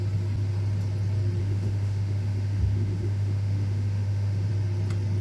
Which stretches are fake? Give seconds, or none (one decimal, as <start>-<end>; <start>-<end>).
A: 1.4-4.5